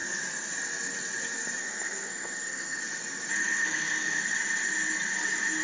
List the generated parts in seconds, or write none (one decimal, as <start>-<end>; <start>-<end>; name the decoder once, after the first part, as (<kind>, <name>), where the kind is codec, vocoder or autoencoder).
1.6-2.8 (codec, SNAC); 3.4-4.2